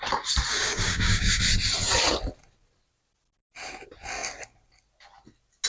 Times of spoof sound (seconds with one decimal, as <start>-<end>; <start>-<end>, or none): 0.5-1.4